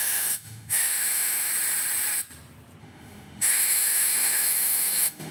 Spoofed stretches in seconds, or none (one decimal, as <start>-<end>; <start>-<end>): 0.0-1.5; 2.8-5.3